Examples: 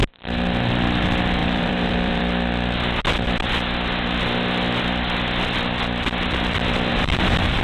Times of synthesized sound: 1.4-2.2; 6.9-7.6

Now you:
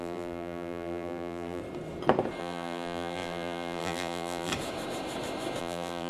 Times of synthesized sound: 0.0-1.6; 2.4-4.5; 5.6-6.1